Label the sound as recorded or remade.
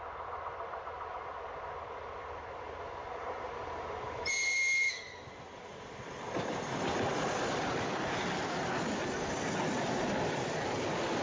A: remade